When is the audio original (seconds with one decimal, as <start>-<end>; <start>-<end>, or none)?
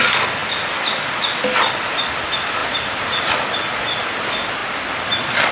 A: 0.0-2.6; 3.8-4.6